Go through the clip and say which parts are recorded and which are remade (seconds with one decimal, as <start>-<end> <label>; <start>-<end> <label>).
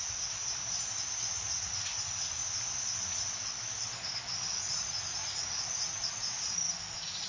0.0-0.4 remade; 0.4-1.5 recorded; 1.5-2.4 remade; 2.4-4.6 recorded; 4.6-7.3 remade